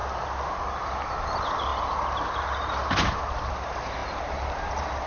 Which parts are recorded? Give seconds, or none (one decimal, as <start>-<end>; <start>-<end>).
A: 0.0-1.2